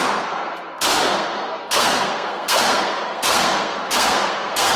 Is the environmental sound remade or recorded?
remade